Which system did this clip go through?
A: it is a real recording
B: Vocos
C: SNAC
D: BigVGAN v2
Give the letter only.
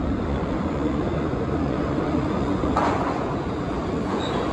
B